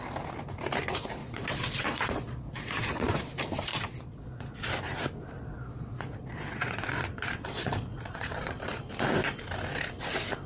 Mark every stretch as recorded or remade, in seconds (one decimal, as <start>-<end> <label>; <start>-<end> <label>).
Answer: 0.0-1.2 recorded; 1.2-3.3 remade; 3.3-3.7 recorded; 3.7-4.7 remade; 4.7-5.4 recorded; 5.4-8.8 remade; 8.8-10.5 recorded